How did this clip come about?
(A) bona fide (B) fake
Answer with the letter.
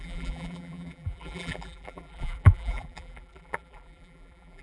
B